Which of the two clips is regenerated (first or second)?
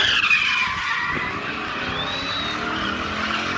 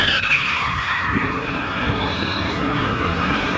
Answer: second